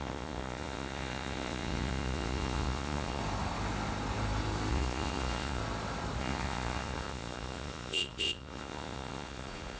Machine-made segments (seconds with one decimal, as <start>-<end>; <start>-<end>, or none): 0.0-3.2; 4.7-5.6; 6.2-9.8